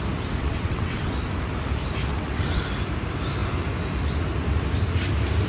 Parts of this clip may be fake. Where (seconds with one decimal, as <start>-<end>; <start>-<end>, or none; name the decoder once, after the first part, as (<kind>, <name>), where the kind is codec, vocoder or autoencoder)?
0.4-1.1 (vocoder, WaveNeXt); 2.1-2.6